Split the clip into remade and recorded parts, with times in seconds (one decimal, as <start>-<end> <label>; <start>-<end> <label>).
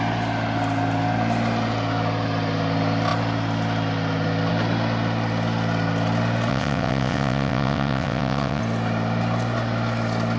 0.0-6.5 recorded; 6.5-8.6 remade; 8.6-10.4 recorded